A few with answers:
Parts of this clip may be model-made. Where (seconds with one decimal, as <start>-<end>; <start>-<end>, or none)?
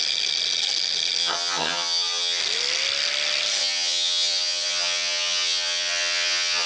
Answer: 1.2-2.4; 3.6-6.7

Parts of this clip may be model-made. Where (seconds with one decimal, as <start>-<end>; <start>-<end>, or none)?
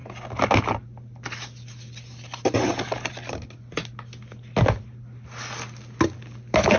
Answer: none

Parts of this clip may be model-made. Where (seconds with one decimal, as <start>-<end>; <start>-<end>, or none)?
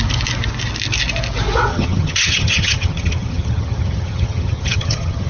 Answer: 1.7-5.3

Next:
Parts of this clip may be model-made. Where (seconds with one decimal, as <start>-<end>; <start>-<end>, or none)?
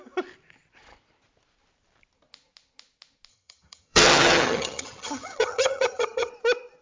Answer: 3.3-6.3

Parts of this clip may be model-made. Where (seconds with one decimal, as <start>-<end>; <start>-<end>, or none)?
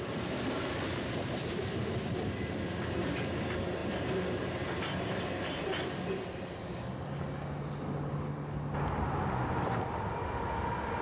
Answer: none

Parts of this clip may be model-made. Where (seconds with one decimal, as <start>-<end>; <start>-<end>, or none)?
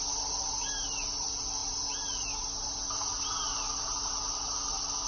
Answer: none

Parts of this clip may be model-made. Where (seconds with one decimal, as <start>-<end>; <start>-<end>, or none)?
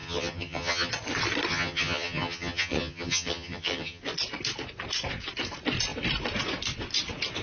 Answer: 0.0-0.9; 1.5-4.0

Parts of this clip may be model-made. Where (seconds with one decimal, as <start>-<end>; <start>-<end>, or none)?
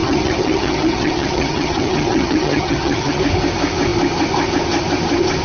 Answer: 0.0-3.2